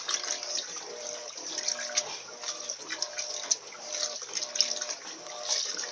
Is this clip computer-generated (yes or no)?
no